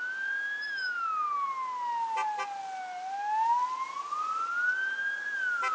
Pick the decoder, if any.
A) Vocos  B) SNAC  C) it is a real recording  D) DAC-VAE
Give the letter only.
C